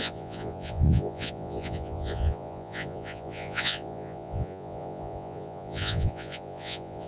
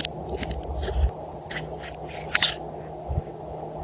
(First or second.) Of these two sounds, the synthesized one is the first